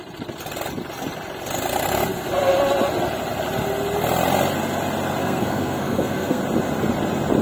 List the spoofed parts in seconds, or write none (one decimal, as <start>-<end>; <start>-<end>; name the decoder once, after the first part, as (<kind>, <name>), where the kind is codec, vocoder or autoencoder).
5.2-6.4 (codec, SNAC)